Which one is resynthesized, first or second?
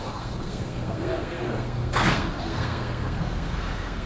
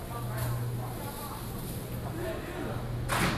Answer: first